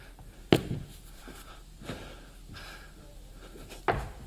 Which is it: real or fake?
real